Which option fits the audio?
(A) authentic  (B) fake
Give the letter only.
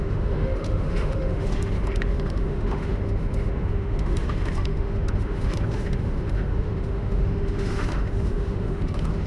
B